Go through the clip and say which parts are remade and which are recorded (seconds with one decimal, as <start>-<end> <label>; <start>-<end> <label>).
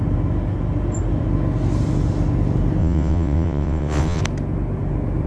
0.0-2.8 recorded; 2.8-4.2 remade; 4.2-5.3 recorded